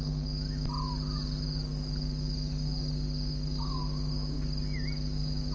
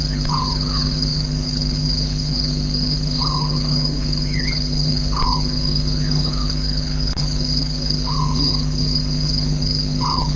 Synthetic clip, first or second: second